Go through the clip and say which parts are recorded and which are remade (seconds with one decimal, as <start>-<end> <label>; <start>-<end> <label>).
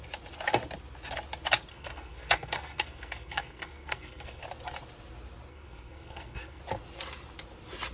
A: 0.0-1.7 recorded; 1.7-4.4 remade; 4.4-5.5 recorded; 5.5-6.6 remade; 6.6-7.9 recorded